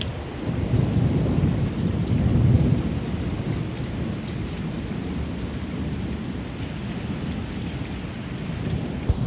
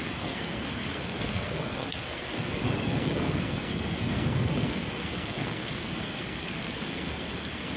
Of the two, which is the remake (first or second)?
second